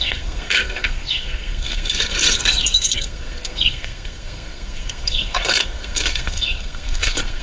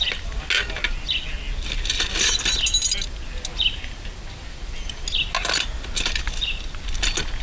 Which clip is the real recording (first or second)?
second